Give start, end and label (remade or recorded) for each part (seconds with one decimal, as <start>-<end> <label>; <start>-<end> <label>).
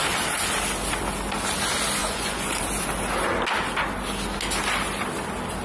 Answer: 0.0-2.0 recorded; 2.0-2.6 remade; 2.6-5.6 recorded